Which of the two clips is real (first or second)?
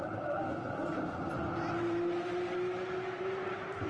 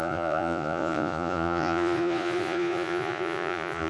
first